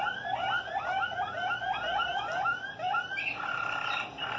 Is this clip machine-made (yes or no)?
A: no